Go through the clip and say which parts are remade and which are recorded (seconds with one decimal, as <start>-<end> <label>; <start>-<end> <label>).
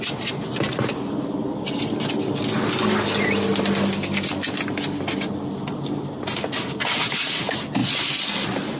0.0-8.8 recorded